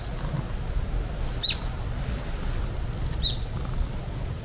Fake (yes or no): no